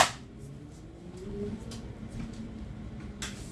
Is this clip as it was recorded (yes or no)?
yes